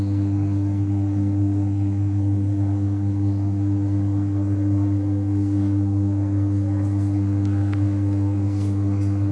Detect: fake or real fake